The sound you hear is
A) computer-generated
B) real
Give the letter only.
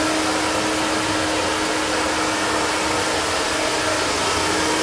B